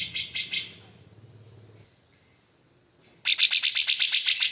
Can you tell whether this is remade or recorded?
recorded